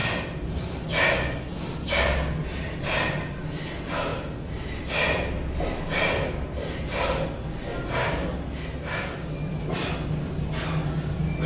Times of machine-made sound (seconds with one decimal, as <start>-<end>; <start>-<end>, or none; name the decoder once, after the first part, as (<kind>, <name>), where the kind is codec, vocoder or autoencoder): none